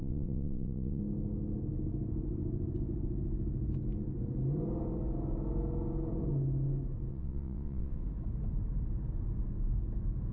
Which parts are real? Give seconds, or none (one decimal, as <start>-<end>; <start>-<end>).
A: 1.0-7.1; 8.0-10.3